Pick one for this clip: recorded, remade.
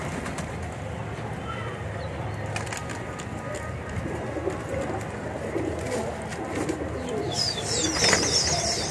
recorded